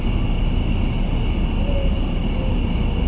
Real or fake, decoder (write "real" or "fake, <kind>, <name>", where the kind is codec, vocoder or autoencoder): real